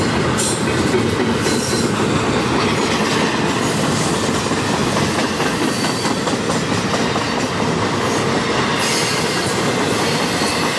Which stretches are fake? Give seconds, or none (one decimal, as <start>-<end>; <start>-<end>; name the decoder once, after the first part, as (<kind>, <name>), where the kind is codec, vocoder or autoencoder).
none